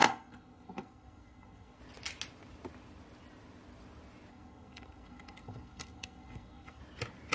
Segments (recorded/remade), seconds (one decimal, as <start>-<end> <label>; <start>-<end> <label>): 0.0-1.8 remade; 1.8-4.3 recorded; 4.3-6.8 remade; 6.8-7.3 recorded